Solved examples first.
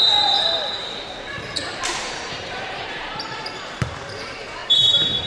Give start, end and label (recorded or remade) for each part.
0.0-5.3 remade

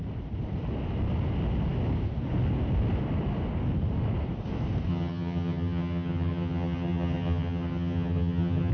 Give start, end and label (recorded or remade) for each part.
0.0-4.9 recorded; 4.9-8.7 remade

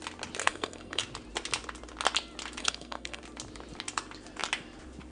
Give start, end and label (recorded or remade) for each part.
0.0-0.4 recorded; 0.4-1.0 remade; 1.0-2.6 recorded; 2.6-3.2 remade; 3.2-5.1 recorded

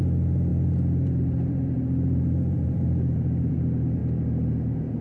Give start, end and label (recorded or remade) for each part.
0.0-4.0 remade; 4.0-5.0 recorded

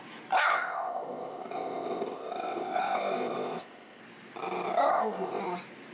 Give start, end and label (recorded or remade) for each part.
0.0-0.5 recorded; 0.5-4.0 remade; 4.0-4.9 recorded; 4.9-5.4 remade; 5.4-5.9 recorded

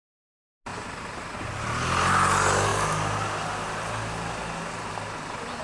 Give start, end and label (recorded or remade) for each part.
0.0-0.7 recorded; 0.7-1.5 remade; 1.5-5.6 recorded

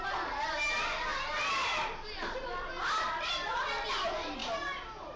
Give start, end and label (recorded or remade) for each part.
0.0-5.2 recorded